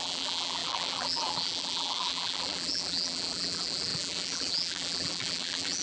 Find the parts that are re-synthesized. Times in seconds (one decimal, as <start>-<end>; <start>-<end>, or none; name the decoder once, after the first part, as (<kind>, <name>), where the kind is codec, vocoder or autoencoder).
0.0-5.8 (vocoder, BigVGAN v2)